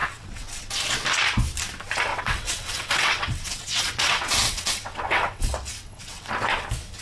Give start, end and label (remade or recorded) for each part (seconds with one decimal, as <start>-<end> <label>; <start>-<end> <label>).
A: 0.0-0.7 remade; 0.7-2.1 recorded; 2.1-6.3 remade; 6.3-7.0 recorded